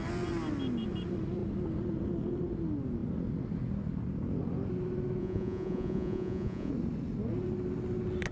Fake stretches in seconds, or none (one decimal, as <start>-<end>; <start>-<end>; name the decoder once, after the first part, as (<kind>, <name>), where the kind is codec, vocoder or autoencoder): 5.2-6.7 (vocoder, Vocos)